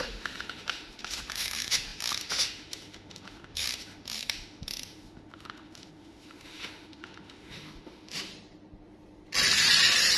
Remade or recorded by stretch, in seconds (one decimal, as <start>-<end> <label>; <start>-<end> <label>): 0.0-8.3 remade; 8.3-10.2 recorded